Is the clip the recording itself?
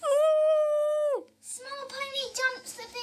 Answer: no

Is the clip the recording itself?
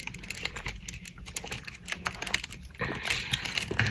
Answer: yes